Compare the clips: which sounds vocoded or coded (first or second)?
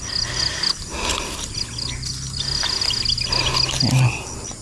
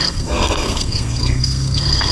second